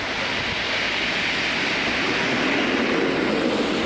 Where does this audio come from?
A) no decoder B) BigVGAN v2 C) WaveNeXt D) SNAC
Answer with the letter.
A